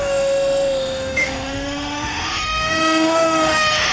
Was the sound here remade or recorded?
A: remade